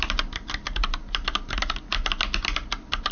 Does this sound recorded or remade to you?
recorded